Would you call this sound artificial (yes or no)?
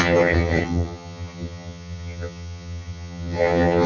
yes